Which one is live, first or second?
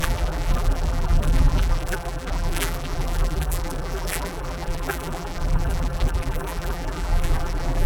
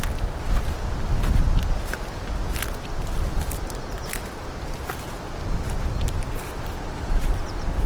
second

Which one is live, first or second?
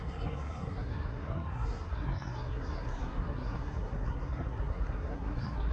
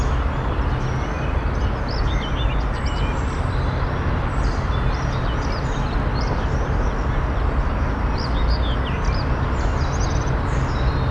second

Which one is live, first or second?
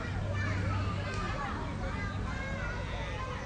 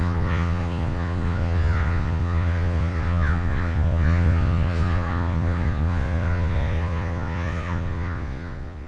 first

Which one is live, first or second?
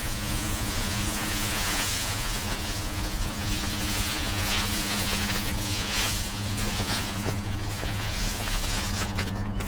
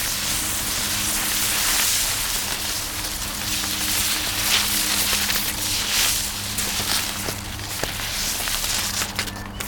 second